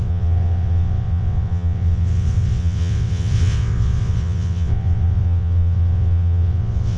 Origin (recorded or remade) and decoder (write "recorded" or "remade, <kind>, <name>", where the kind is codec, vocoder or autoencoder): remade, vocoder, WaveNeXt